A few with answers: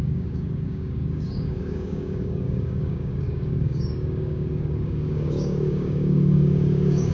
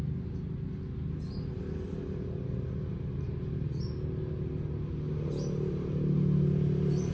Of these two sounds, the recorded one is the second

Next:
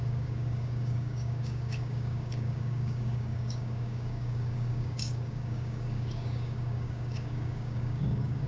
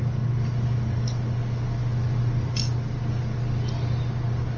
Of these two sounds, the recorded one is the second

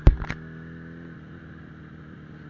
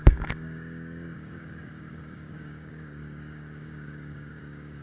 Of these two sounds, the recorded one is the first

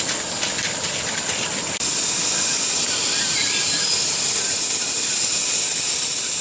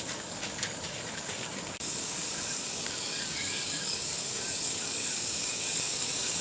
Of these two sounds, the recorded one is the first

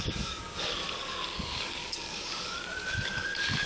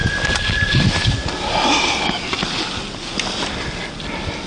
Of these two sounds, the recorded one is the second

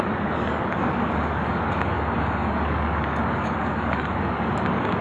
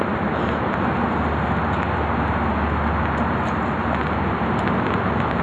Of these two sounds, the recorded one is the second